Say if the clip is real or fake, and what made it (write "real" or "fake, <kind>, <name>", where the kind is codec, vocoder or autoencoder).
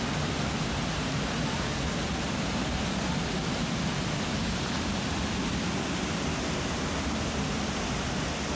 real